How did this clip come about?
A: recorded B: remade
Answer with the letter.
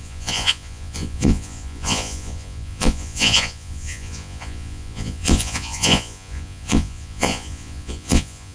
B